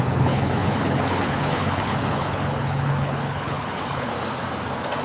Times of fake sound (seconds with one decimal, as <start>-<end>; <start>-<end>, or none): 0.0-4.1